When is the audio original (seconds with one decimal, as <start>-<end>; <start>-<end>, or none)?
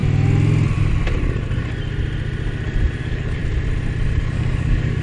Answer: 0.0-3.0; 3.4-4.2